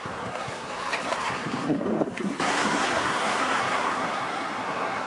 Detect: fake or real fake